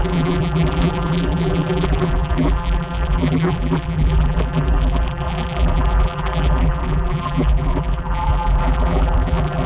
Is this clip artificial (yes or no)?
yes